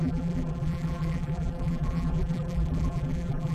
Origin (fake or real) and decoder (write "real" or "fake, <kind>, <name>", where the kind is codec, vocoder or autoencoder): fake, vocoder, BigVGAN v2